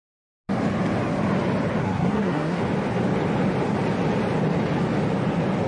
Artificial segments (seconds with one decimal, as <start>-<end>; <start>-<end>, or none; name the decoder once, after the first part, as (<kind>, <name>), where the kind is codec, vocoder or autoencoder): 1.8-2.6 (codec, SNAC)